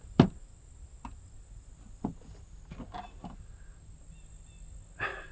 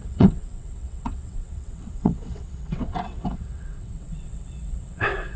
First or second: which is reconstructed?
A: second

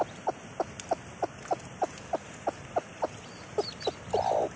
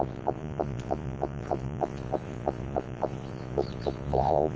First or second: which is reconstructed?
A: second